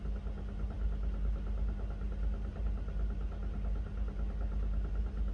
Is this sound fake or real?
real